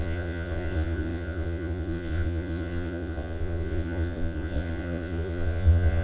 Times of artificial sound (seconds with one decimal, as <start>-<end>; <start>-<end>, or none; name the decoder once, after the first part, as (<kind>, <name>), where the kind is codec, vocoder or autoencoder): 0.0-6.0 (vocoder, Vocos)